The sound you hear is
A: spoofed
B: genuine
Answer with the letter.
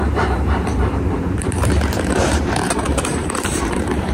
A